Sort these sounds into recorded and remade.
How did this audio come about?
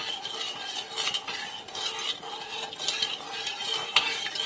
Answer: recorded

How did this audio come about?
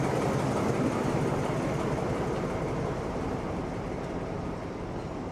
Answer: recorded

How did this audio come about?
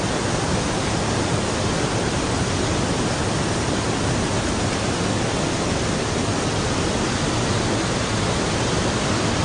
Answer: recorded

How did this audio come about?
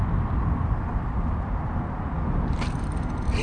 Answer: recorded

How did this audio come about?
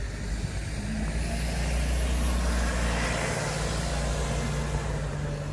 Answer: recorded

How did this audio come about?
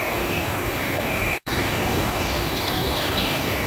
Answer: remade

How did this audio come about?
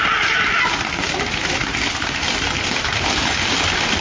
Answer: remade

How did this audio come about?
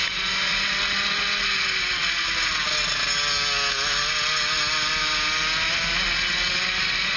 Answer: recorded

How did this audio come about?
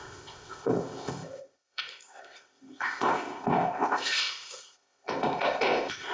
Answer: remade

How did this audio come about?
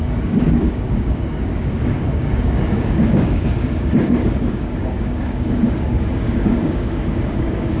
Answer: remade